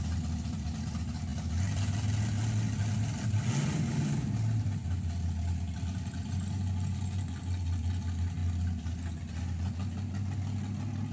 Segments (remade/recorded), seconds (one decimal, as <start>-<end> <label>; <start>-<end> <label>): 0.0-11.1 recorded